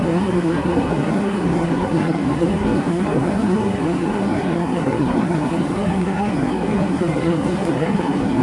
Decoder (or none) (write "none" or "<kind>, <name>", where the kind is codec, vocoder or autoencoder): codec, SNAC